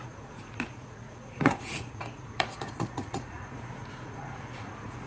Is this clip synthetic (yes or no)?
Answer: yes